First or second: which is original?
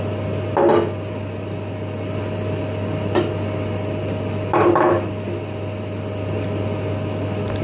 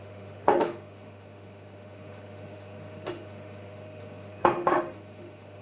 first